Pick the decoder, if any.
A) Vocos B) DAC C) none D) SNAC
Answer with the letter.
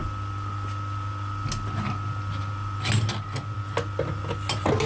C